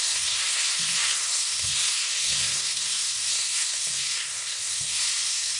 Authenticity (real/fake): fake